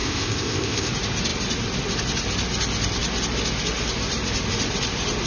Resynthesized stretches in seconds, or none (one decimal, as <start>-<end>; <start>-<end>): 0.0-0.9